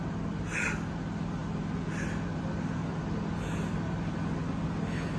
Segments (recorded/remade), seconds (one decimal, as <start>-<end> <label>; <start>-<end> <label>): 0.0-5.2 recorded